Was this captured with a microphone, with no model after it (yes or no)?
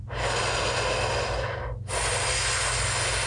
yes